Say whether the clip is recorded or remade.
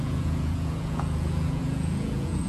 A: remade